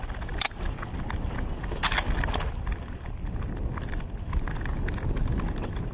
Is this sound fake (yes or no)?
no